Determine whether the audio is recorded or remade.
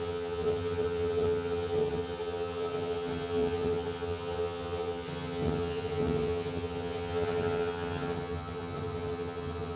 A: remade